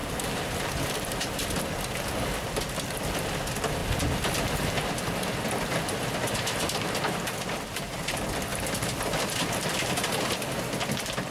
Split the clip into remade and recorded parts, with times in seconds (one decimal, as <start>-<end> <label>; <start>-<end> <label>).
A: 0.0-1.6 remade; 1.6-11.3 recorded